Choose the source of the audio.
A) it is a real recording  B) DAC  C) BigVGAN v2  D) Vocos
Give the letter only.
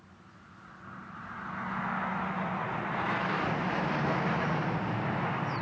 A